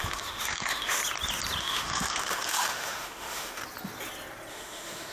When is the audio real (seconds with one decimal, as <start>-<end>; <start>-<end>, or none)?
1.0-1.6; 3.6-4.5

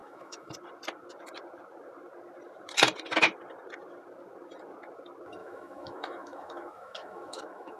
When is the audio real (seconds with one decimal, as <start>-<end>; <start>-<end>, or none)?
0.5-5.4

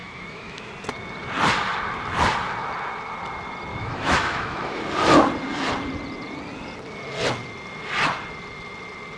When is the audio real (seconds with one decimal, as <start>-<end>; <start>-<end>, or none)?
0.7-3.7; 4.8-9.2

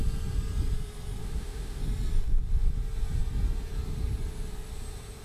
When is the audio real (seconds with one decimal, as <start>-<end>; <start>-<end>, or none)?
0.0-1.2; 1.8-5.2

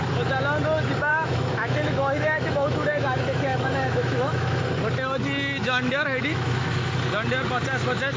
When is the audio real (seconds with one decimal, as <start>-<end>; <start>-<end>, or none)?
0.0-1.1; 4.6-5.6; 6.9-8.2